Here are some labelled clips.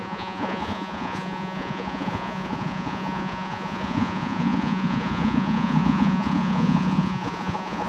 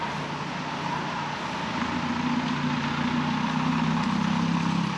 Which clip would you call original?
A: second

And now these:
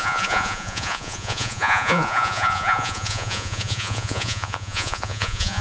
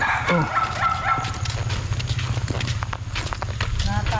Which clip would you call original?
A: second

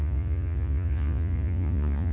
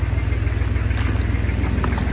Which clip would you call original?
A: second